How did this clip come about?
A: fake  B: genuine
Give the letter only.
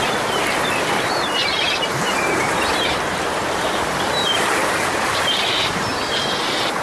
A